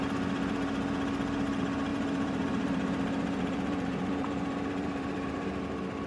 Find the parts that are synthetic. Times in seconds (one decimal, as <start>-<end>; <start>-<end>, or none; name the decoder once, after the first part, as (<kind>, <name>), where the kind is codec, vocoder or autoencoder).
1.9-5.6 (vocoder, BigVGAN v2)